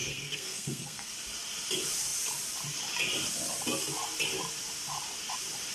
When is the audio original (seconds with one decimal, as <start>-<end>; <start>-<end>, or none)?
1.1-5.7